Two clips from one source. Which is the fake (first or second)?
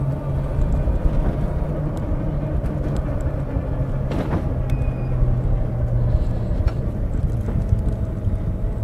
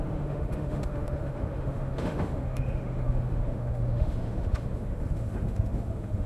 second